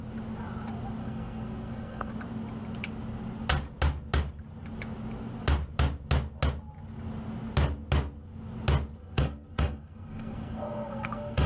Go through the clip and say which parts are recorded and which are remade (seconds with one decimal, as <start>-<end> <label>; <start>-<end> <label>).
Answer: 0.0-1.0 recorded; 1.0-2.1 remade; 2.1-9.0 recorded; 9.0-11.5 remade